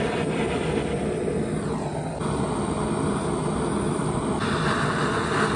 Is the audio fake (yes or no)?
no